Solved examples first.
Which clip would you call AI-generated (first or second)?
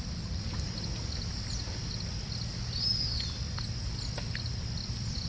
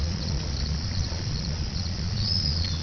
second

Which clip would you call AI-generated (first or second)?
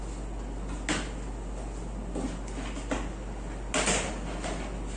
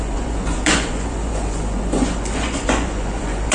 second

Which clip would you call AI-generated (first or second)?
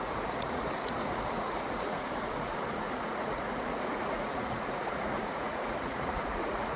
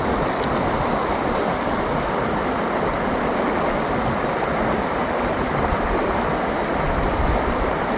first